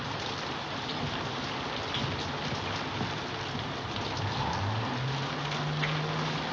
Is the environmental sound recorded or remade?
recorded